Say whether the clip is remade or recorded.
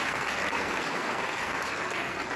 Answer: remade